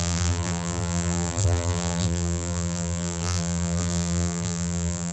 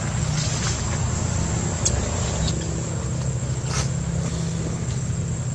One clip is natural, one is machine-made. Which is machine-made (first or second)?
first